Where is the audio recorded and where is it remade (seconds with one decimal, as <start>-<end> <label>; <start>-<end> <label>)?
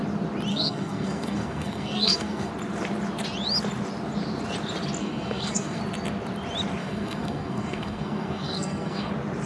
0.0-0.5 recorded; 0.5-2.5 remade; 2.5-5.0 recorded; 5.0-5.8 remade; 5.8-6.8 recorded; 6.8-9.1 remade; 9.1-9.5 recorded